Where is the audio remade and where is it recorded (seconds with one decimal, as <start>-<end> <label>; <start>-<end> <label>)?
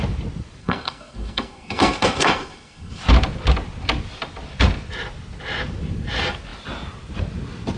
0.0-0.6 recorded; 0.6-3.0 remade; 3.0-7.8 recorded